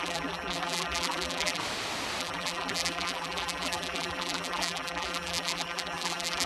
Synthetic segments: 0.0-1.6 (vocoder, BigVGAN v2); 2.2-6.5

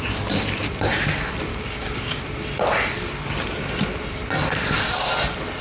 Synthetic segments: 1.5-2.2 (codec, DAC)

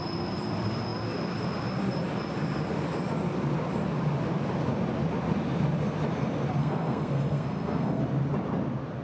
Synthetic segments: 6.6-8.0 (codec, SNAC)

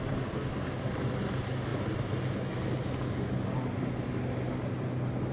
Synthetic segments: none

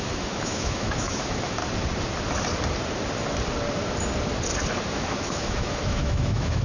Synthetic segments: 0.0-1.6 (autoencoder, DAC-VAE); 4.9-6.6

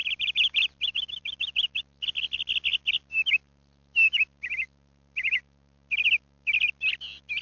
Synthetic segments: 0.0-1.8 (vocoder, BigVGAN v2)